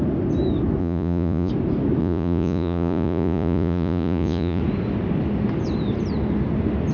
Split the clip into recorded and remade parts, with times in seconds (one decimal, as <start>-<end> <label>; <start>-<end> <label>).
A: 0.0-0.8 recorded; 0.8-1.5 remade; 1.5-2.0 recorded; 2.0-4.6 remade; 4.6-6.9 recorded